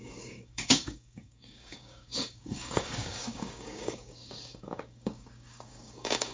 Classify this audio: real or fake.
fake